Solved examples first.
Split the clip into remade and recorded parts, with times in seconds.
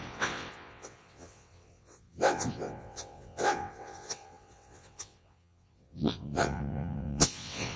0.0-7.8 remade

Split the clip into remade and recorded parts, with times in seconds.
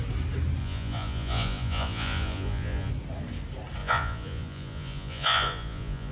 0.0-0.6 recorded; 0.6-2.9 remade; 2.9-3.8 recorded; 3.8-6.1 remade